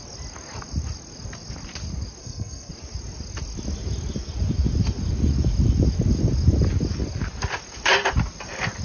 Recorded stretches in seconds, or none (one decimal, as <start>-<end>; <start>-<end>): 0.0-2.2; 2.7-8.8